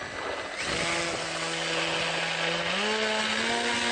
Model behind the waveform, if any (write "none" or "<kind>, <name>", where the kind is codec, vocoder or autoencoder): none